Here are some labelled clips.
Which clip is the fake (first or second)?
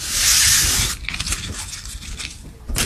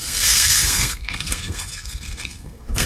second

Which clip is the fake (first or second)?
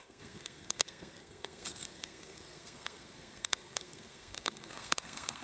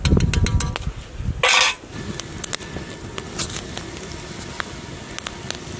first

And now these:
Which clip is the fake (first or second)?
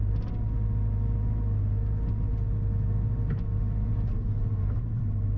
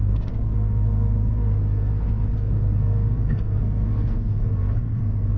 second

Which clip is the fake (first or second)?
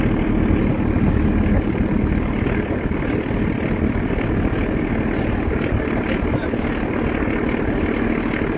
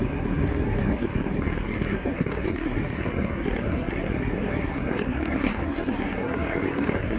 second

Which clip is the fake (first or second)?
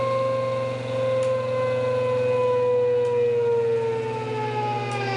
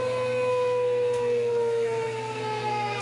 second